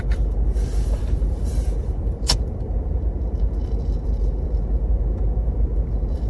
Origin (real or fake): fake